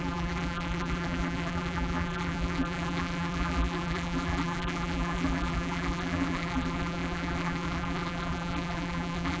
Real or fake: fake